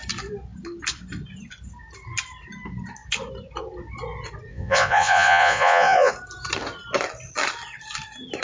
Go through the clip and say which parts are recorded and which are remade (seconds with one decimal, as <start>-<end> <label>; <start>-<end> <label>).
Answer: 0.0-4.5 recorded; 4.5-6.1 remade; 6.1-8.4 recorded

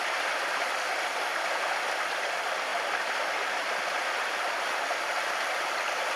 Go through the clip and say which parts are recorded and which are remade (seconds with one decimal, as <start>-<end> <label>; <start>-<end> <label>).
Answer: 0.0-6.2 remade